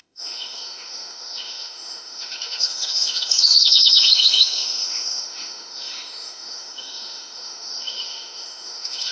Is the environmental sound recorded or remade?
remade